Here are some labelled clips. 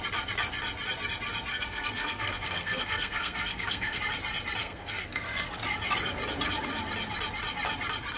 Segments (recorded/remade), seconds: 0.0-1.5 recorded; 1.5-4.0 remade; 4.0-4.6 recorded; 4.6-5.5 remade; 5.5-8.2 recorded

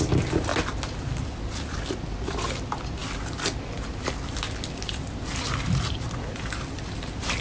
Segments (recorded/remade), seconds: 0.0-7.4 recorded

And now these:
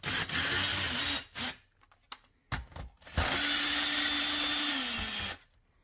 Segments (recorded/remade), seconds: 0.0-5.8 recorded